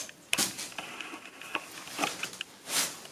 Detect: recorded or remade recorded